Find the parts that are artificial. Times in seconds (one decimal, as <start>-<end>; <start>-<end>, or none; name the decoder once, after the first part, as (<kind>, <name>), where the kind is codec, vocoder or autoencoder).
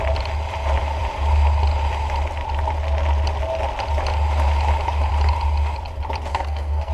6.3-6.9 (codec, SNAC)